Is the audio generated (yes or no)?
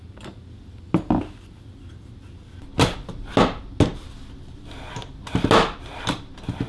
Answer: no